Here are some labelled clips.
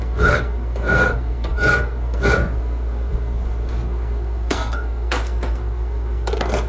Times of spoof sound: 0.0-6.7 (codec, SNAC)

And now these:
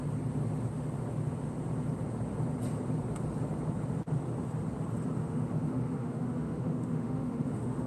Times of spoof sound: 5.2-7.9 (autoencoder, DAC-VAE)

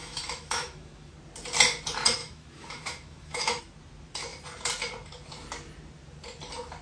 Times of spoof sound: 0.0-1.1 (autoencoder, DAC-VAE); 2.2-3.6